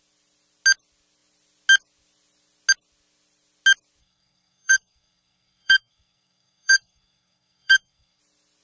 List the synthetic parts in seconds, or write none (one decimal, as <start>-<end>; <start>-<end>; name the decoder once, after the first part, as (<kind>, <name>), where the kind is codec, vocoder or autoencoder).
4.0-8.2 (codec, SNAC)